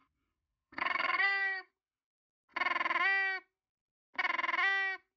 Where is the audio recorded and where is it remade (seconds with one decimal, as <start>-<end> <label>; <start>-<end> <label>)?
0.0-1.7 remade; 1.7-5.2 recorded